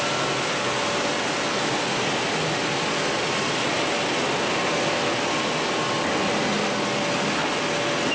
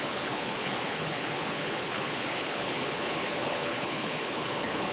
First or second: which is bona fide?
first